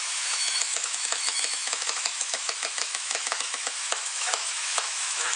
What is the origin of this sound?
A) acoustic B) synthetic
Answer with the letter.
B